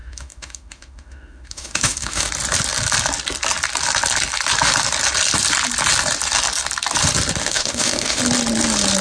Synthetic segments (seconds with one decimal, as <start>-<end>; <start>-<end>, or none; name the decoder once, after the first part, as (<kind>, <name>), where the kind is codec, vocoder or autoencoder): 0.0-2.3 (autoencoder, DAC-VAE); 7.4-8.2